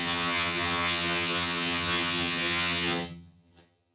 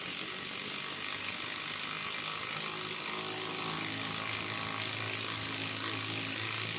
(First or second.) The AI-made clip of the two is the first